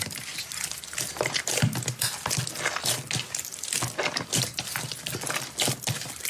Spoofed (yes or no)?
no